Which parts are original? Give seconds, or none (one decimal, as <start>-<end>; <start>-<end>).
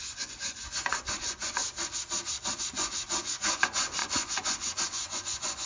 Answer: 1.6-2.6